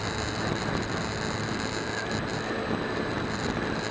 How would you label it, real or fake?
fake